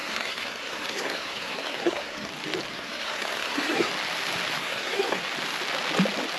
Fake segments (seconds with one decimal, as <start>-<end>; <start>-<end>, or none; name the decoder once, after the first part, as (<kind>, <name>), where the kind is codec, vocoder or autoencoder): 0.0-2.3 (codec, SNAC); 2.7-3.9; 4.6-5.2